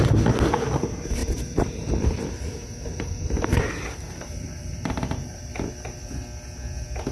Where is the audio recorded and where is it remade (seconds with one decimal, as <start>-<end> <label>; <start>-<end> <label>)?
0.0-1.2 recorded; 1.2-5.5 remade; 5.5-7.1 recorded